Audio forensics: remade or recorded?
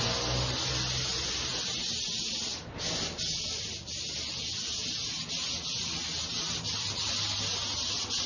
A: recorded